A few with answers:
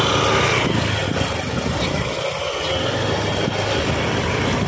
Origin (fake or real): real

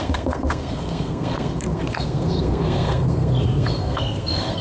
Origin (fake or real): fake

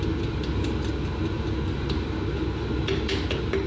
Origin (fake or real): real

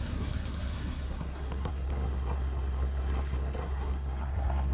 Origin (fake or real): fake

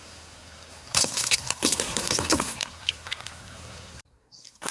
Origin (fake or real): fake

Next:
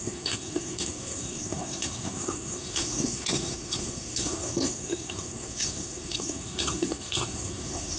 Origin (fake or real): fake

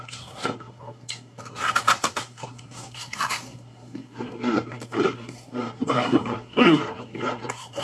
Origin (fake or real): fake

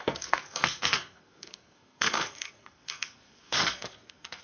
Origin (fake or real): fake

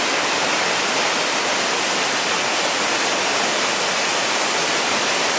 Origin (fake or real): real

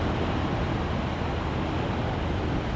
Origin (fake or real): real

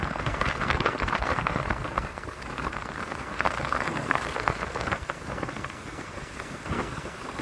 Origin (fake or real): fake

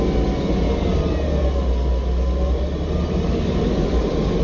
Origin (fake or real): real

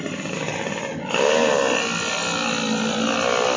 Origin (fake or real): real